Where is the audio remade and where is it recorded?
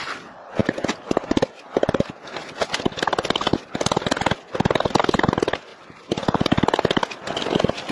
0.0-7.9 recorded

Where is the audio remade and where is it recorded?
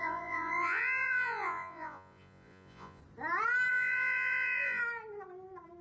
0.0-3.0 remade; 3.0-3.7 recorded; 3.7-4.8 remade; 4.8-5.8 recorded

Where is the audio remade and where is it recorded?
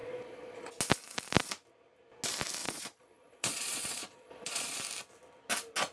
0.0-0.7 remade; 0.7-2.6 recorded; 2.6-4.8 remade; 4.8-5.9 recorded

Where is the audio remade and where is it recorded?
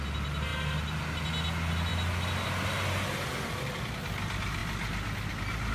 0.0-5.7 recorded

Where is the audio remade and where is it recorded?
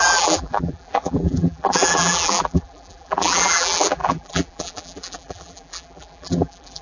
0.0-6.8 remade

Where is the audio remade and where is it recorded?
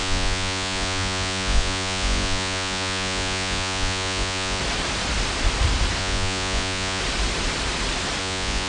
0.0-4.6 remade; 4.6-6.0 recorded; 6.0-7.0 remade; 7.0-8.2 recorded; 8.2-8.7 remade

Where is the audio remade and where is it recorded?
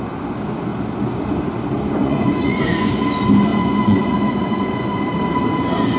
0.0-2.0 recorded; 2.0-2.9 remade; 2.9-3.5 recorded; 3.5-5.0 remade; 5.0-6.0 recorded